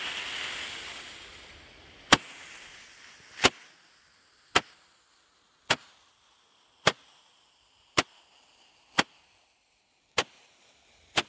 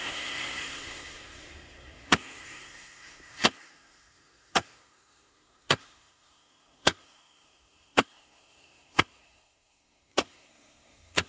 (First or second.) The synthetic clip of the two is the second